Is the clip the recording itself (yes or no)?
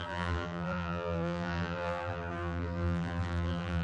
no